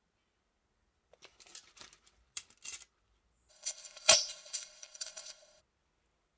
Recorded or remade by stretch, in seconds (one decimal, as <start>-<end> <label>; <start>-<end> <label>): 0.0-3.5 recorded; 3.5-5.6 remade; 5.6-6.4 recorded